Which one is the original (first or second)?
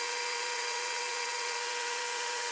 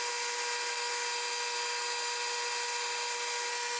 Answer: second